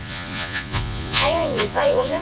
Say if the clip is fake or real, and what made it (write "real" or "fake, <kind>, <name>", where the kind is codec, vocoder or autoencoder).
fake, vocoder, Vocos